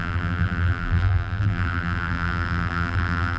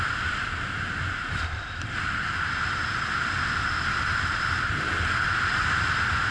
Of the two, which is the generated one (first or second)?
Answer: first